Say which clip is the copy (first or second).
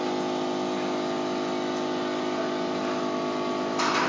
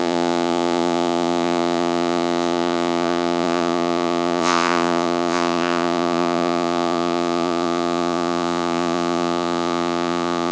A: second